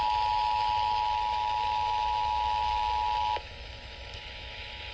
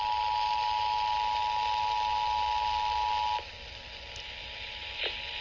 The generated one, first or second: first